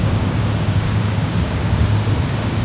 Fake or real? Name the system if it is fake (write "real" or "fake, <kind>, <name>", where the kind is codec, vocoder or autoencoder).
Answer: fake, codec, DAC